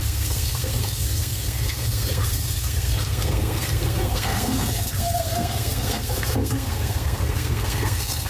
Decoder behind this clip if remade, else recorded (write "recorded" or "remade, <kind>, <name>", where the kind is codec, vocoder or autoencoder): remade, codec, SNAC